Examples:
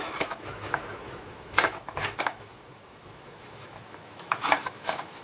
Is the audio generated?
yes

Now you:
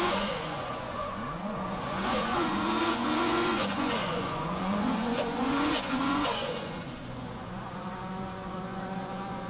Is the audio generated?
yes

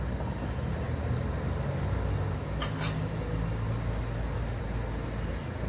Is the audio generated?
no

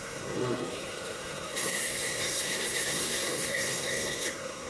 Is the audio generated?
yes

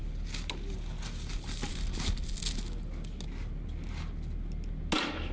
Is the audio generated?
no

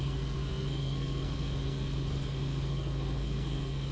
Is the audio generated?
yes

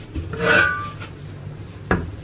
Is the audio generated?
yes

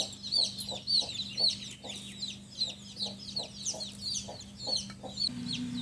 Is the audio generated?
no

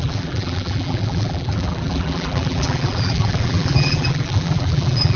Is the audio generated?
yes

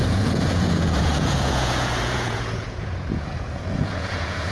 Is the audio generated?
yes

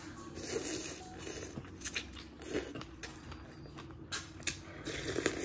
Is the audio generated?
no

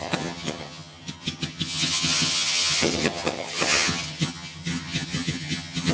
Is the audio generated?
yes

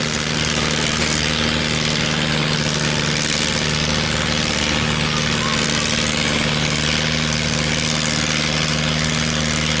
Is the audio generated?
no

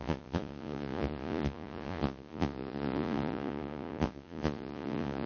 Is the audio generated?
yes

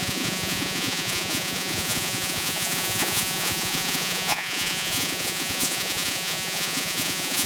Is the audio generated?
yes